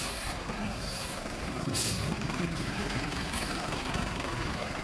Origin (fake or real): fake